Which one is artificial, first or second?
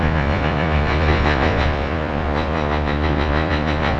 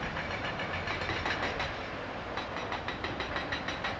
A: first